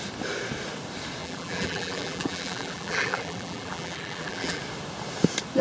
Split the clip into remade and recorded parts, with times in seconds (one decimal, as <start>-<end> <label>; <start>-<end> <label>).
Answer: 0.0-1.2 recorded; 1.2-4.6 remade; 4.6-5.6 recorded

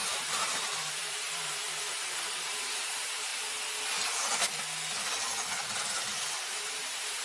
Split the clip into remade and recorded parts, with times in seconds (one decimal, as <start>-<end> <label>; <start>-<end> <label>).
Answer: 0.0-3.3 remade; 3.3-6.3 recorded; 6.3-7.2 remade

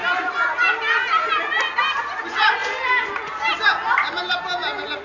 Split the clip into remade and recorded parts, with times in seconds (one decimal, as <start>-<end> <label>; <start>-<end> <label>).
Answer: 0.0-5.0 recorded

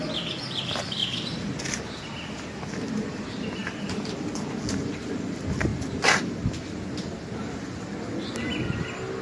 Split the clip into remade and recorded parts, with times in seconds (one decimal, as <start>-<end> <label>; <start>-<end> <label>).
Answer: 0.0-1.0 recorded; 1.0-1.6 remade; 1.6-9.2 recorded

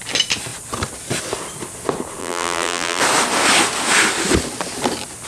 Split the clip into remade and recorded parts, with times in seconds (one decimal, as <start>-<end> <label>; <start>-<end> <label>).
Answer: 0.0-2.2 recorded; 2.2-3.0 remade; 3.0-5.3 recorded

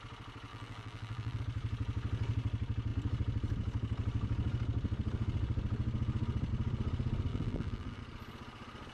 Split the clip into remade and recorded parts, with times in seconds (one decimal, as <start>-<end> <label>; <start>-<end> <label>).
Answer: 0.0-0.5 recorded; 0.5-1.4 remade; 1.4-7.3 recorded; 7.3-8.0 remade; 8.0-8.9 recorded